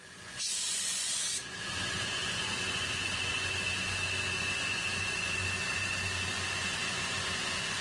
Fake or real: fake